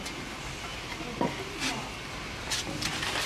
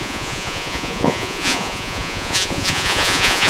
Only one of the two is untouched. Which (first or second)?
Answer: first